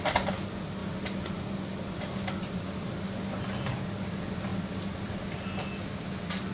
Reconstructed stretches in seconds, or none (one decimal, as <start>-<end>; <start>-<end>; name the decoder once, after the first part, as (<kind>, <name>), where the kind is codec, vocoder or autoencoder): none